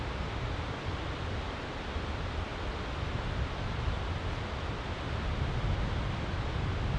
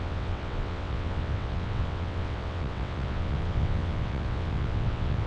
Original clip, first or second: first